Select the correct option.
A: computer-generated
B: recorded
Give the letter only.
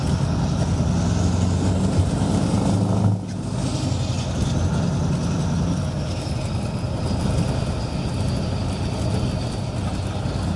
B